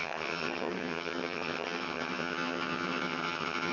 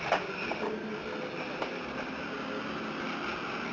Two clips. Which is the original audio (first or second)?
second